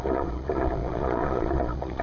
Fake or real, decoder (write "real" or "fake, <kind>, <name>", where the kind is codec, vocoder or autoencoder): fake, vocoder, Vocos